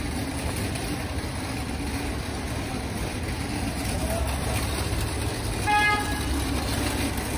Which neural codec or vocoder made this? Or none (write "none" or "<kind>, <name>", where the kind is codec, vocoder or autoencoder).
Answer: none